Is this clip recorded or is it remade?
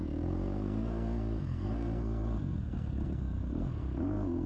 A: remade